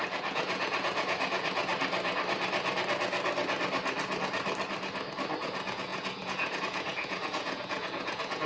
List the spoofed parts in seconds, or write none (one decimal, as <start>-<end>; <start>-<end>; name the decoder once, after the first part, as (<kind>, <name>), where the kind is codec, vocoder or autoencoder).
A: 0.0-1.7 (vocoder, Vocos); 5.4-8.5